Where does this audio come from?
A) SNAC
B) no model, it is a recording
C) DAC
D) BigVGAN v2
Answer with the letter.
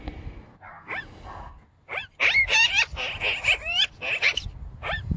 B